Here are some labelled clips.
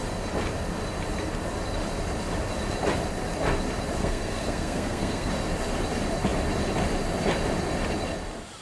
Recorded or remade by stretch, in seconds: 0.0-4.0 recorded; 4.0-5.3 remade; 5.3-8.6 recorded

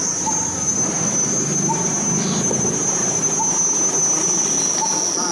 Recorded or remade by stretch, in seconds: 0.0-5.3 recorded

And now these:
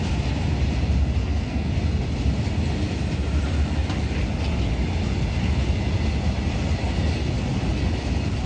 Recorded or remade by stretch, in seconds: 0.0-1.2 recorded; 1.2-1.7 remade; 1.7-8.5 recorded